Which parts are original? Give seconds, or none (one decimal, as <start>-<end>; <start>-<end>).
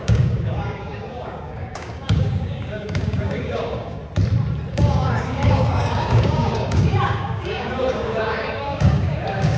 4.0-4.7